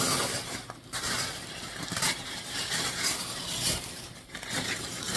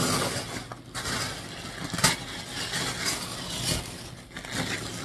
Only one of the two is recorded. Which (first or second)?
second